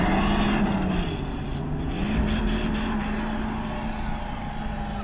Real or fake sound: real